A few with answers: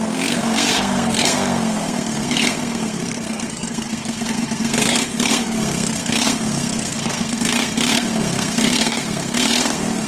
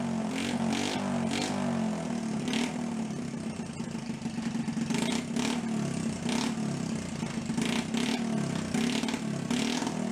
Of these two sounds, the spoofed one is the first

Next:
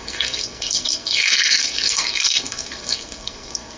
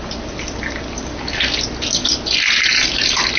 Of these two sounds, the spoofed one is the first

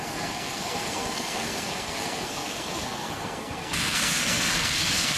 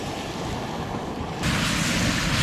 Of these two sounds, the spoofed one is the first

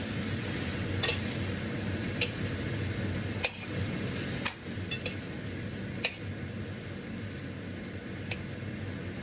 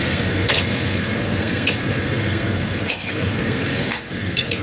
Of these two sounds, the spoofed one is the second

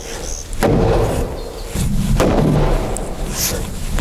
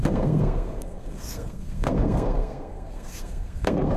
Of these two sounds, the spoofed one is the second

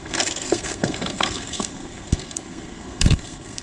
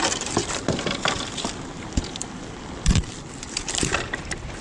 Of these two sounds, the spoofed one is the first